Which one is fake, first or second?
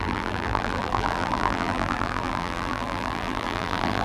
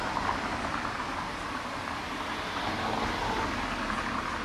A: first